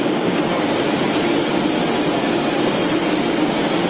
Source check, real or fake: real